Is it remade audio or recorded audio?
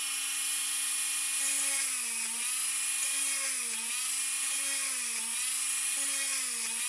recorded